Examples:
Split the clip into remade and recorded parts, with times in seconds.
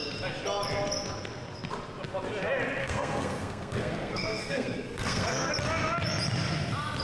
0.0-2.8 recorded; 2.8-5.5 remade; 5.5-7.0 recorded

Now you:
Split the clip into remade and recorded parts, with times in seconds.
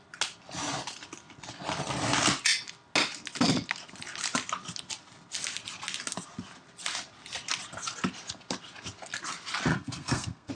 0.0-9.7 recorded; 9.7-10.5 remade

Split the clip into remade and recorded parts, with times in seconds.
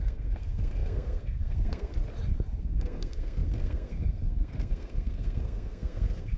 0.0-1.9 remade; 1.9-2.6 recorded; 2.6-6.4 remade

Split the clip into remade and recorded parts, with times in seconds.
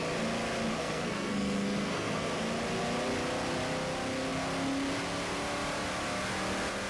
0.0-0.7 recorded; 0.7-2.3 remade; 2.3-6.9 recorded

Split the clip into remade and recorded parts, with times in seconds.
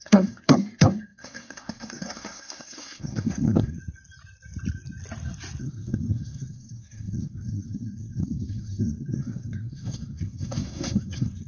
0.0-3.8 remade; 3.8-5.6 recorded; 5.6-11.5 remade